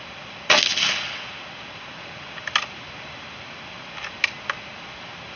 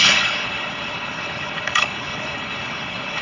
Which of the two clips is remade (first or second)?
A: second